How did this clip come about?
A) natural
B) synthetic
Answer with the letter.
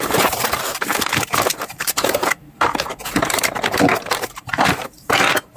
B